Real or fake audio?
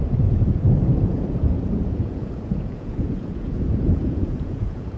fake